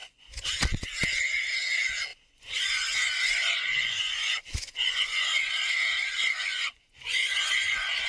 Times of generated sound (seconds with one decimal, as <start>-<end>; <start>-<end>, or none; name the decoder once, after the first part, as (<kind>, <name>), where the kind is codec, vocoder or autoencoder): 0.0-0.5 (vocoder, Vocos); 2.1-5.5; 5.9-8.1